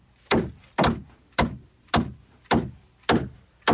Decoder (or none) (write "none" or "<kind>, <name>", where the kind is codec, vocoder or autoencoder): none